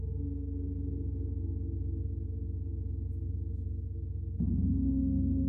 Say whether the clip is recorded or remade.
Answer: remade